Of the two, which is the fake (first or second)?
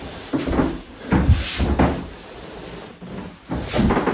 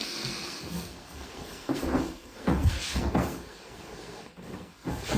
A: second